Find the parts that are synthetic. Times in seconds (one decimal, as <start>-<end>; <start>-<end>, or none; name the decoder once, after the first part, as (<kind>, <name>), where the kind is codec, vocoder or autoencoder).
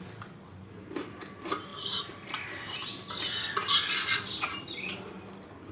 none